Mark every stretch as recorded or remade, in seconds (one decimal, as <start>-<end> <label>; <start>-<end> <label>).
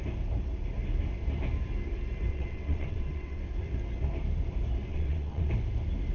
0.0-2.3 recorded; 2.3-3.4 remade; 3.4-4.9 recorded; 4.9-5.5 remade; 5.5-6.1 recorded